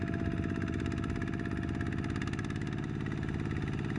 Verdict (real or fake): real